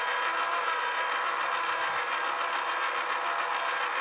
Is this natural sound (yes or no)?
yes